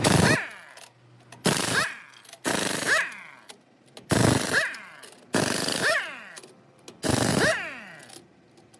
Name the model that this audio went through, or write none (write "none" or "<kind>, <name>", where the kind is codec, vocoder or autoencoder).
none